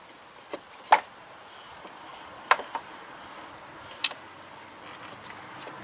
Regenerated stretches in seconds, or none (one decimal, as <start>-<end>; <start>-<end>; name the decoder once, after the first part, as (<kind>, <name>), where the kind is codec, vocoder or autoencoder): none